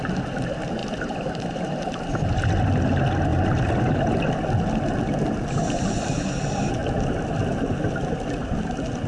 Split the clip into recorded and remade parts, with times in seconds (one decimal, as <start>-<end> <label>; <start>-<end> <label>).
0.0-0.8 recorded; 0.8-2.2 remade; 2.2-3.3 recorded; 3.3-4.3 remade; 4.3-9.1 recorded